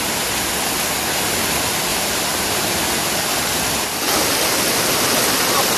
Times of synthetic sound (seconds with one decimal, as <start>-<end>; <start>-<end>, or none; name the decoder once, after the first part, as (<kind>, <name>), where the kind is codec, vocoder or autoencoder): none